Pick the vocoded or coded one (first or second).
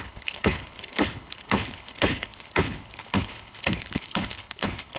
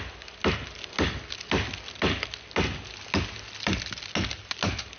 first